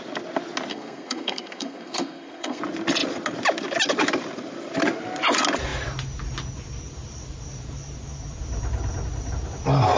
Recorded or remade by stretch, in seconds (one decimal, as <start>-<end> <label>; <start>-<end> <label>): 0.0-0.7 recorded; 0.7-2.6 remade; 2.6-10.0 recorded